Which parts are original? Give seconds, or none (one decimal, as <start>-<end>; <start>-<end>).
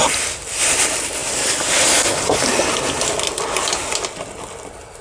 0.0-1.2; 2.1-5.0